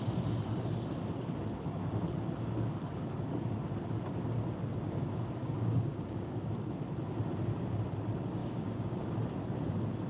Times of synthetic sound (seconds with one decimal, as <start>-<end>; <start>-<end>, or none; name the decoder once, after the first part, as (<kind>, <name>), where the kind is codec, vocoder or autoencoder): 5.4-6.5 (codec, DAC); 8.4-9.2